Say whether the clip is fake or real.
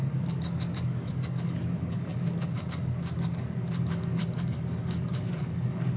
fake